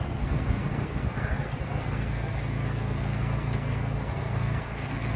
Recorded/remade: remade